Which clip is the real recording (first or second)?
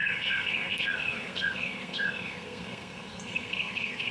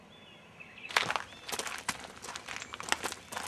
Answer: second